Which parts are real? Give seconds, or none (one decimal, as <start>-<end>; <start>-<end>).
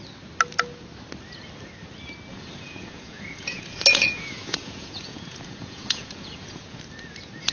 0.0-2.3; 6.8-7.5